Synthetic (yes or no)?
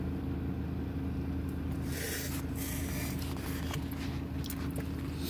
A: no